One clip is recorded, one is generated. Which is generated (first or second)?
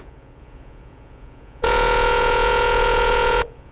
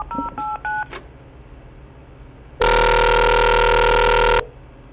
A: first